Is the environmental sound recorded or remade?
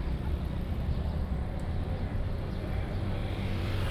remade